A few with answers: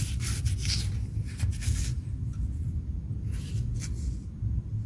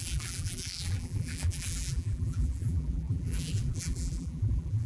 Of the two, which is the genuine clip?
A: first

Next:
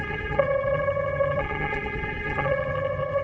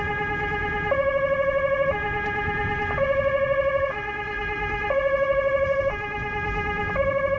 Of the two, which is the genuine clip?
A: second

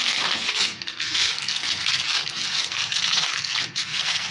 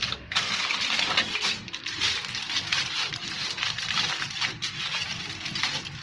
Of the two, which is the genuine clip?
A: second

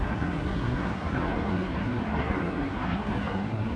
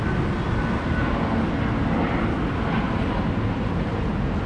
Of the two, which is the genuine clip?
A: second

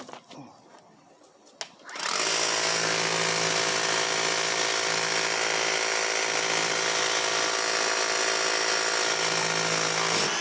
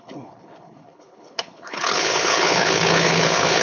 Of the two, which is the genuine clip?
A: first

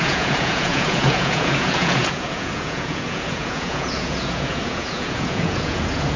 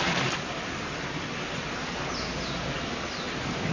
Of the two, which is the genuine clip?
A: second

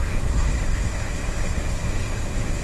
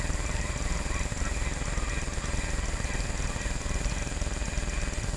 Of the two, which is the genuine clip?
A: second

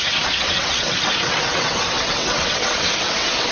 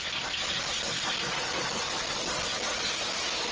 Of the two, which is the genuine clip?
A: second